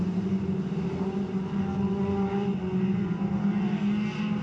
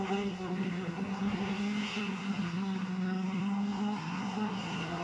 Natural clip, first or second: first